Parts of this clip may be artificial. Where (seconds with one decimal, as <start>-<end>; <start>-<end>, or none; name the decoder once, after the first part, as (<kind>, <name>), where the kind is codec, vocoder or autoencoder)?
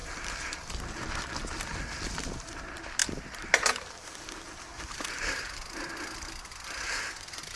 0.0-1.3 (vocoder, BigVGAN v2); 3.0-4.8